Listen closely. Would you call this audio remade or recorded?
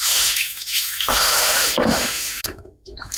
remade